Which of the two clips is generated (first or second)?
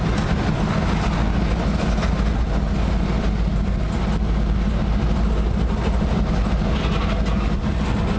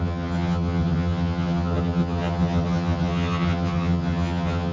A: second